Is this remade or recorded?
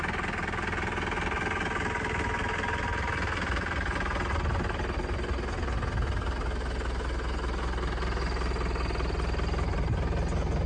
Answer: recorded